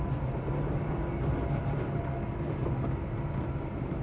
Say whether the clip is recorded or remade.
recorded